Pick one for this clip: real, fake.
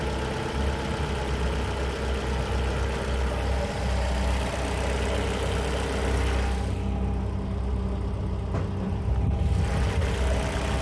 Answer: real